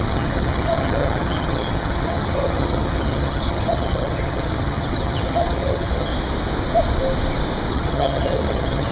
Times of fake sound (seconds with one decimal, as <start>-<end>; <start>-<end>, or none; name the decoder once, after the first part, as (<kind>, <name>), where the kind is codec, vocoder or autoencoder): 0.0-6.1 (vocoder, HiFi-GAN); 7.7-8.9